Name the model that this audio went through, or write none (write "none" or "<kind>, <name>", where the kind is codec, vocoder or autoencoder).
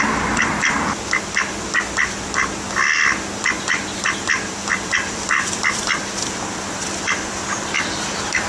vocoder, BigVGAN v2